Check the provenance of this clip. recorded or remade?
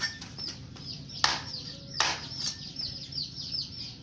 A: recorded